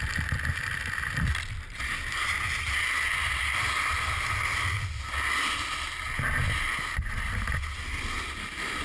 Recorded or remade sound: recorded